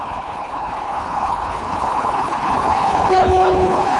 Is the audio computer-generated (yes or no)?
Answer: yes